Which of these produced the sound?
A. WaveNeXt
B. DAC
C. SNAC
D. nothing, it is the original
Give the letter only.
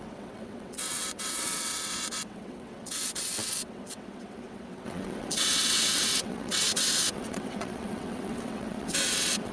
A